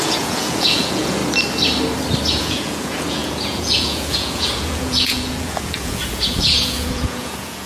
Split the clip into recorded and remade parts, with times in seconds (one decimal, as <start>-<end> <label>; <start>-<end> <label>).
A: 0.0-1.2 remade; 1.2-2.3 recorded; 2.3-7.7 remade

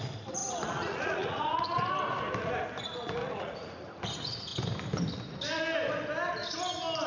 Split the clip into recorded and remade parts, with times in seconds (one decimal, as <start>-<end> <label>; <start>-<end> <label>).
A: 0.0-0.4 recorded; 0.4-1.9 remade; 1.9-3.2 recorded; 3.2-4.0 remade; 4.0-7.1 recorded

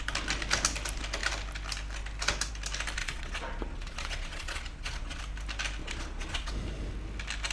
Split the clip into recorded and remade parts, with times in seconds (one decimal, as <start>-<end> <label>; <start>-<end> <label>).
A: 0.0-3.0 recorded; 3.0-5.2 remade; 5.2-5.8 recorded; 5.8-6.5 remade; 6.5-7.5 recorded

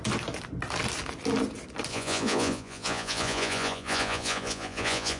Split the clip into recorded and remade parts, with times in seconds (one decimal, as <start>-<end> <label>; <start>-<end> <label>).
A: 0.0-1.9 recorded; 1.9-5.2 remade